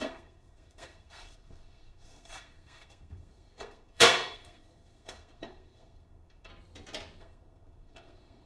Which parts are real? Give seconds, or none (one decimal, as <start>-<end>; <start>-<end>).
6.5-7.2

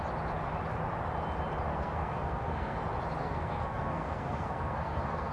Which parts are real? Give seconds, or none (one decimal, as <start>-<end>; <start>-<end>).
0.0-1.7; 2.8-3.2